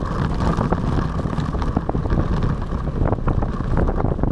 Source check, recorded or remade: recorded